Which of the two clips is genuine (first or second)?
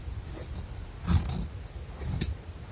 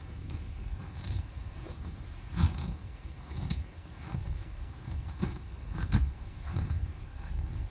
first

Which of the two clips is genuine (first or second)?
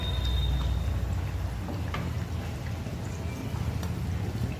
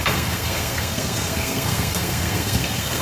first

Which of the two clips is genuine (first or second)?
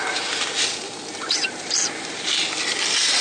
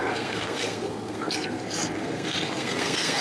first